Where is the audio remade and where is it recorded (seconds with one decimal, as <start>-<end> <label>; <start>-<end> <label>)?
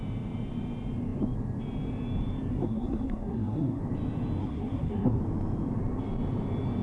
0.0-2.5 recorded; 2.5-3.8 remade; 3.8-4.4 recorded; 4.4-5.2 remade; 5.2-6.8 recorded